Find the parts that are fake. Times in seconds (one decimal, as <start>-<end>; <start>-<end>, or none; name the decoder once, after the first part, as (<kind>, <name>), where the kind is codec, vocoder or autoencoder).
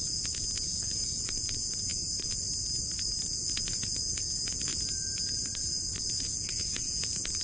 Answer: 0.0-1.9 (vocoder, Vocos); 3.2-4.7; 6.1-7.4